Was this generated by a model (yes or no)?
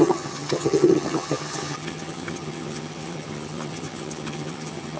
yes